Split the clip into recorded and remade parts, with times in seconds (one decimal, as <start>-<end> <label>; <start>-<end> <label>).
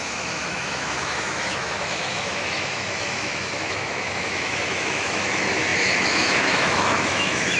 0.0-7.6 remade